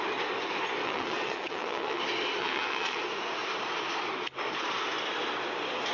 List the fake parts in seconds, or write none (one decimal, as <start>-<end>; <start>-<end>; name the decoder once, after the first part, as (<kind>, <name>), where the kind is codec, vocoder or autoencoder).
0.8-2.0 (vocoder, WaveNeXt); 2.4-3.0